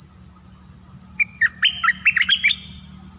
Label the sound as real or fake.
real